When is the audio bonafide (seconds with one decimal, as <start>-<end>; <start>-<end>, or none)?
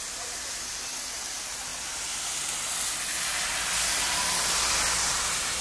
0.0-5.6